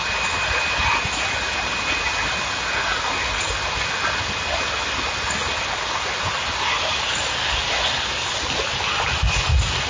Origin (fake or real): real